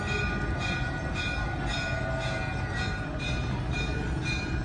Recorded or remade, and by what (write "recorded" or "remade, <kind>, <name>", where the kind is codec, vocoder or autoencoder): recorded